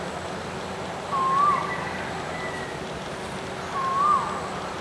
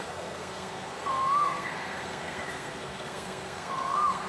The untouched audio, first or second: first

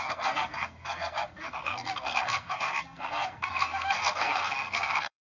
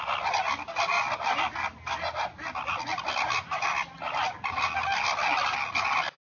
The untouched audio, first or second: second